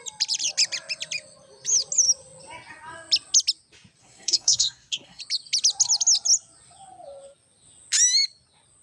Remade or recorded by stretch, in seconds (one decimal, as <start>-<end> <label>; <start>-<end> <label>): 0.0-4.0 recorded; 4.0-5.2 remade; 5.2-8.8 recorded

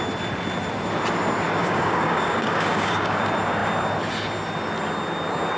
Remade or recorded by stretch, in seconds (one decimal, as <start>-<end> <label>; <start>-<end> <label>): 0.0-1.6 recorded; 1.6-3.2 remade; 3.2-5.6 recorded

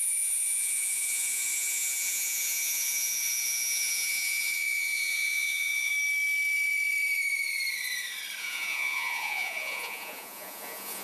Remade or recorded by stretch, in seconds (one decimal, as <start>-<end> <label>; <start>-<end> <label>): 0.0-5.9 remade; 5.9-8.4 recorded; 8.4-11.0 remade

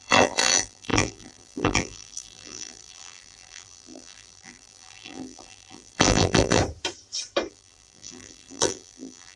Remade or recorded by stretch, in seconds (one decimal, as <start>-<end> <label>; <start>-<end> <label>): 0.0-6.6 remade; 6.6-7.5 recorded; 7.5-9.4 remade